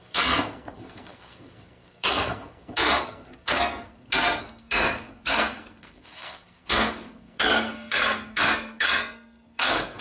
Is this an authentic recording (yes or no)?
no